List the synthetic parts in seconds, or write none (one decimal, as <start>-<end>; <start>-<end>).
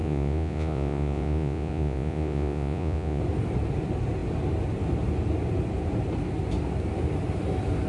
0.0-3.2